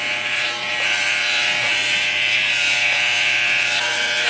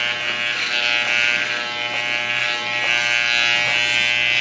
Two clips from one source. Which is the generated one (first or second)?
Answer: first